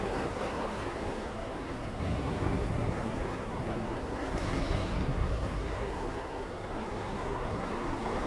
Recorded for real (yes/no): no